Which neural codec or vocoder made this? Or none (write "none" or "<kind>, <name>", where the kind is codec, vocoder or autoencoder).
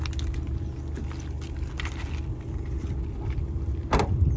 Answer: none